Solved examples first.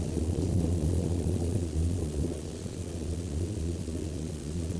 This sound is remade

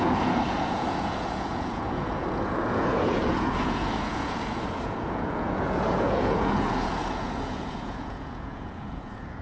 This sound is remade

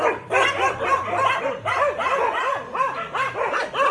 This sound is recorded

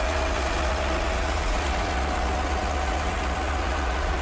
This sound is remade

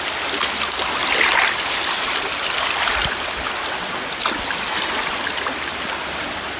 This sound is recorded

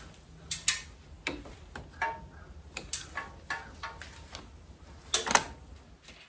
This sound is recorded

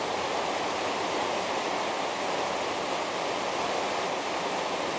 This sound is recorded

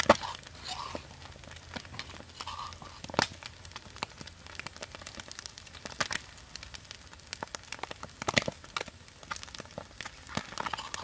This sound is recorded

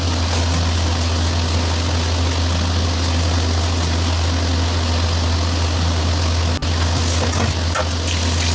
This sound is recorded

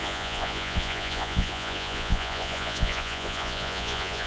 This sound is remade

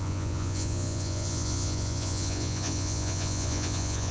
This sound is remade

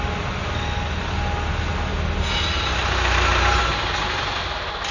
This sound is recorded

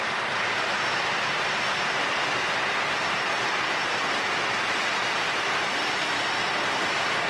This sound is recorded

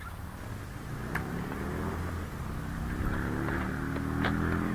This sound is recorded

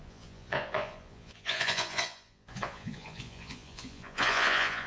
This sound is remade